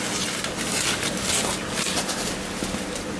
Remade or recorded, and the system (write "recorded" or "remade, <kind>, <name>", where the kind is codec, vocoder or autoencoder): recorded